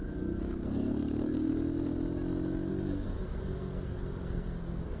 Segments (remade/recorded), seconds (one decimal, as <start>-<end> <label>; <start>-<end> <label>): 0.0-1.5 remade; 1.5-2.7 recorded; 2.7-5.0 remade